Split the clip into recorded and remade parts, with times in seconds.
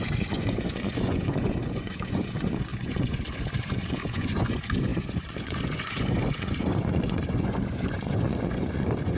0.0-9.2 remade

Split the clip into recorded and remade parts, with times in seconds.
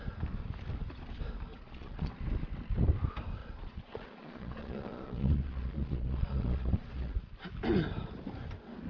0.0-1.5 recorded; 1.5-2.1 remade; 2.1-3.4 recorded; 3.4-7.2 remade; 7.2-8.9 recorded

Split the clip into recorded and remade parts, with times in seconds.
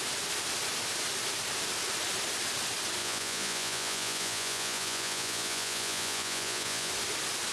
0.0-3.0 recorded; 3.0-6.9 remade; 6.9-7.5 recorded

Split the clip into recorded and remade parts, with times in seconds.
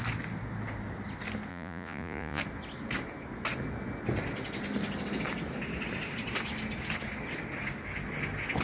0.0-1.5 recorded; 1.5-2.4 remade; 2.4-8.6 recorded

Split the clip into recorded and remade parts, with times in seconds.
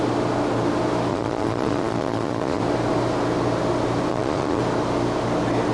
0.0-1.1 recorded; 1.1-2.6 remade; 2.6-4.1 recorded; 4.1-4.6 remade; 4.6-5.7 recorded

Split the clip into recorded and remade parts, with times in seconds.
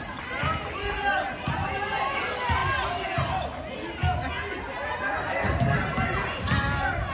0.0-7.1 recorded